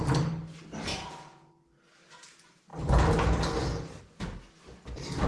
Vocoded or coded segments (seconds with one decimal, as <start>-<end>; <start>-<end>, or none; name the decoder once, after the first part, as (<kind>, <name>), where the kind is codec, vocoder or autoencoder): 0.9-1.5 (vocoder, Vocos)